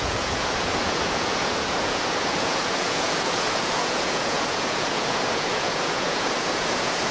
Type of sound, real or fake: fake